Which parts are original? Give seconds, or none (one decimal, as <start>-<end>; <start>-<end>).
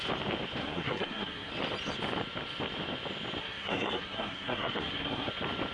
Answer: 0.0-0.6; 1.5-3.4; 5.3-5.7